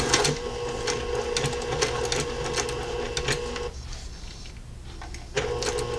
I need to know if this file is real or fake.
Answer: real